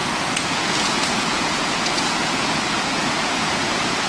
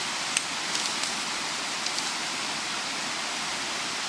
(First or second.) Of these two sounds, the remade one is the first